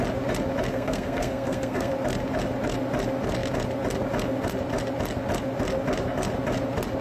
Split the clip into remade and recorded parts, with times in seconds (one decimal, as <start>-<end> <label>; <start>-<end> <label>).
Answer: 0.0-0.7 recorded; 0.7-1.9 remade; 1.9-7.0 recorded